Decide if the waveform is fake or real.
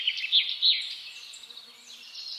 real